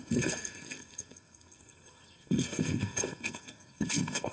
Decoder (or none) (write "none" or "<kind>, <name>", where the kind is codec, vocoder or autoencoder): codec, SNAC